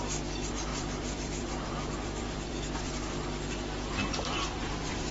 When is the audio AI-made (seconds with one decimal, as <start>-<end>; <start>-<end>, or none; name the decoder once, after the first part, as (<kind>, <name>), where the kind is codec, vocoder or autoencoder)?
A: 0.7-2.9 (vocoder, BigVGAN v2); 4.0-5.1